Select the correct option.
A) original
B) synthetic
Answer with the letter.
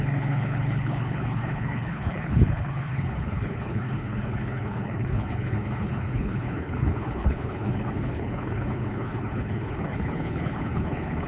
B